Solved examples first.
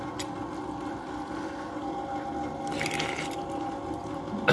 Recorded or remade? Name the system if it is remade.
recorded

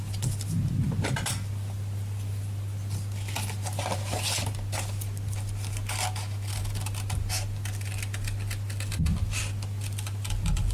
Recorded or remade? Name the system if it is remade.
remade, vocoder, BigVGAN v2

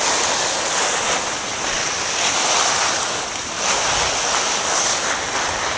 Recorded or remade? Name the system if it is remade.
recorded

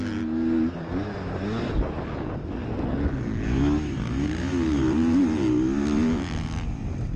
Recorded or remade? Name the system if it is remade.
recorded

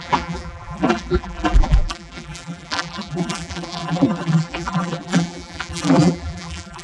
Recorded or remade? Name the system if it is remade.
remade, vocoder, BigVGAN v2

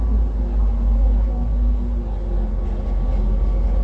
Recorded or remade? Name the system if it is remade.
recorded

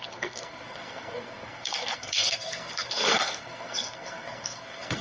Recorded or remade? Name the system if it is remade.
remade, codec, SNAC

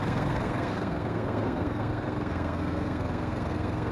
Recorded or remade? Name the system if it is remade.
remade, codec, SNAC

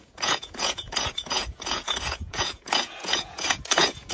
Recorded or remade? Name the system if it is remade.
remade, vocoder, Vocos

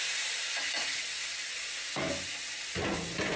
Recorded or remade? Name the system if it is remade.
recorded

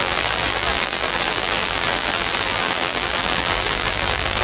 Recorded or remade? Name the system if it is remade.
remade, vocoder, BigVGAN v2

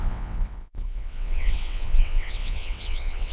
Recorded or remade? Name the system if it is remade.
remade, vocoder, WaveNeXt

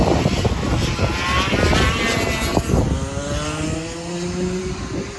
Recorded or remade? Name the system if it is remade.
recorded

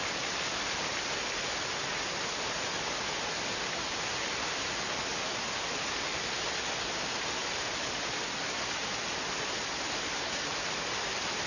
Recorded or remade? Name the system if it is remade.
recorded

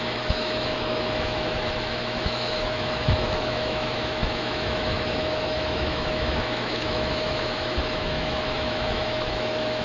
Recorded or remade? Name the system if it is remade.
remade, autoencoder, DAC-VAE